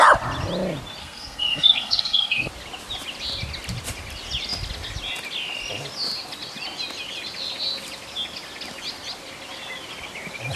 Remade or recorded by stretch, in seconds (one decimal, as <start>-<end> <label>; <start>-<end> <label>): 0.0-1.0 recorded; 1.0-2.5 remade; 2.5-10.6 recorded